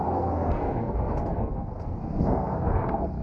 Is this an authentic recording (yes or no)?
no